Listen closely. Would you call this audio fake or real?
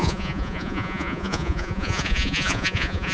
fake